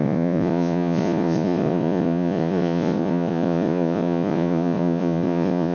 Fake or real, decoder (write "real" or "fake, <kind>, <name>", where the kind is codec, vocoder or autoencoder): fake, vocoder, Vocos